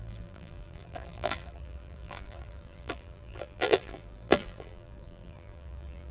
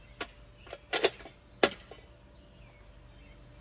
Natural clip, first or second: second